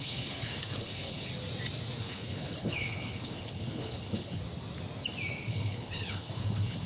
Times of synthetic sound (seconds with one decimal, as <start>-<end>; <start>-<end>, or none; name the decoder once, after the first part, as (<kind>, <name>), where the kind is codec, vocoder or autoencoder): 0.0-1.3 (codec, HILCodec); 2.0-4.4; 5.5-6.9